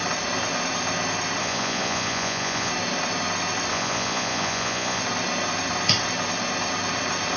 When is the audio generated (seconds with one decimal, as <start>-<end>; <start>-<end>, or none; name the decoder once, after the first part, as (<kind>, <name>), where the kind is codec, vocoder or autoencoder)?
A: 1.4-2.7 (vocoder, Vocos); 3.7-5.0